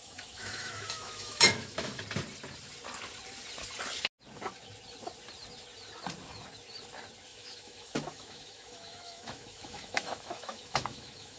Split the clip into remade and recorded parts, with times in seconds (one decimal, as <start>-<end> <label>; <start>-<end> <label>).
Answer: 0.0-2.0 remade; 2.0-7.3 recorded; 7.3-11.4 remade